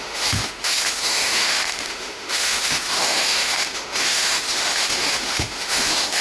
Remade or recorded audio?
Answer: remade